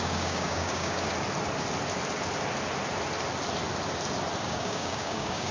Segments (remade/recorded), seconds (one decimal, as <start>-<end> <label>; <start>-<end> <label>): 0.0-1.1 remade; 1.1-4.4 recorded; 4.4-5.5 remade

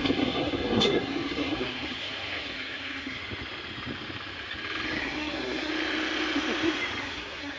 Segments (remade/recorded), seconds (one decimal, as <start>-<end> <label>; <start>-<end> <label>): 0.0-3.2 remade; 3.2-5.0 recorded; 5.0-5.7 remade; 5.7-7.0 recorded; 7.0-7.6 remade

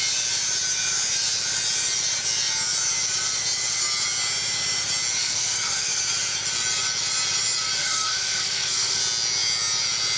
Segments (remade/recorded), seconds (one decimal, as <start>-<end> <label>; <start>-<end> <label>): 0.0-5.2 recorded; 5.2-6.0 remade; 6.0-7.8 recorded; 7.8-9.0 remade; 9.0-10.2 recorded

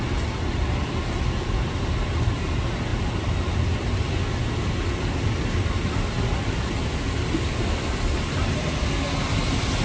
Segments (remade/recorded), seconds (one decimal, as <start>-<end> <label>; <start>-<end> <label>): 0.0-9.8 recorded